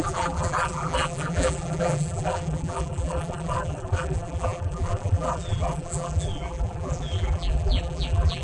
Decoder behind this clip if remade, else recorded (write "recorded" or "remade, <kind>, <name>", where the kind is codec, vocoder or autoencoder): remade, vocoder, BigVGAN v2